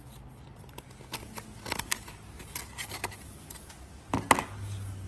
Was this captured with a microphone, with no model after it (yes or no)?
yes